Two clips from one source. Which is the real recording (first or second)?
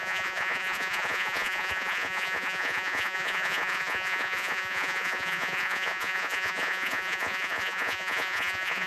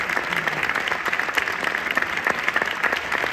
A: second